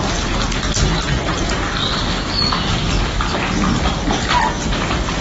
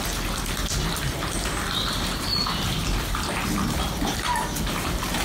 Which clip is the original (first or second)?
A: first